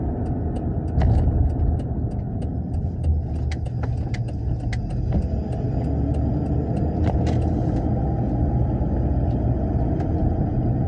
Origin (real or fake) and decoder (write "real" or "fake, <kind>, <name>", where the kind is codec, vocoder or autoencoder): real